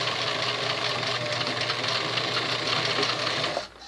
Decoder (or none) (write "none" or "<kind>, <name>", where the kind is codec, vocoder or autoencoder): none